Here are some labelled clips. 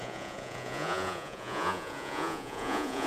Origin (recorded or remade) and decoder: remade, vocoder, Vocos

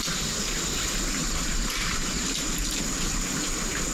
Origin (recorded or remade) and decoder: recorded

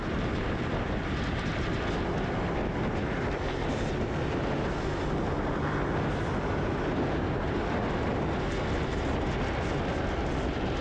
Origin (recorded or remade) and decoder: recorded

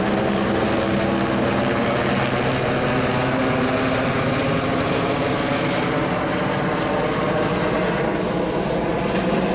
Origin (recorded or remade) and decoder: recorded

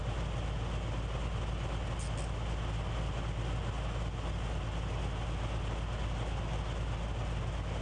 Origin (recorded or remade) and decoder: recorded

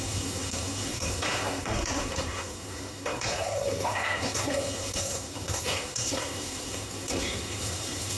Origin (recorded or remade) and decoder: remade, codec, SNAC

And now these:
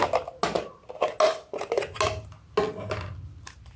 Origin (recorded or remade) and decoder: recorded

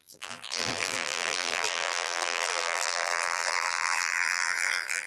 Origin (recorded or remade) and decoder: remade, vocoder, BigVGAN v2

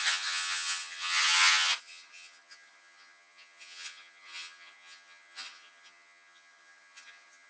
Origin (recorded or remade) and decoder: remade, vocoder, HiFi-GAN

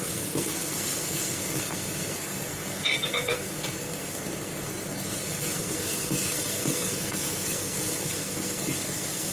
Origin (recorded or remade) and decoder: remade, codec, SNAC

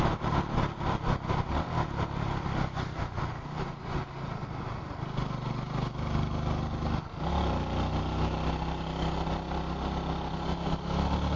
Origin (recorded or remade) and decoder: recorded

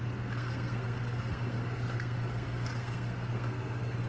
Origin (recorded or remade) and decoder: remade, codec, SNAC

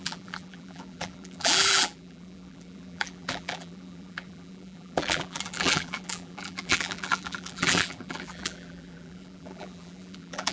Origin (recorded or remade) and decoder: remade, vocoder, BigVGAN v2